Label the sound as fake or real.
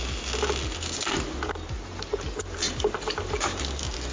real